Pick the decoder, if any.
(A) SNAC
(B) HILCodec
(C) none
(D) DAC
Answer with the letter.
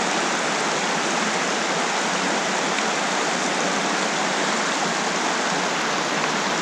C